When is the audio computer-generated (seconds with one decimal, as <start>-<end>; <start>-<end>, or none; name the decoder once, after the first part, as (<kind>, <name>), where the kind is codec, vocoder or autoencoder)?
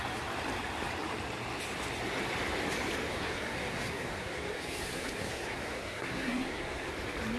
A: 3.1-6.9 (codec, SNAC)